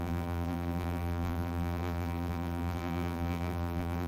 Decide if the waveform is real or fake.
fake